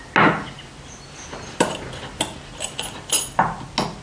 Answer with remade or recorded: recorded